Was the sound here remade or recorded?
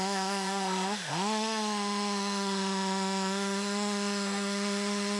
remade